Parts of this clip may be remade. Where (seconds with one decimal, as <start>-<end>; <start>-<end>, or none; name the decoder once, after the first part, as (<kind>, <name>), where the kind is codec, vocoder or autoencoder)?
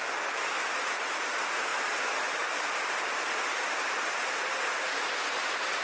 none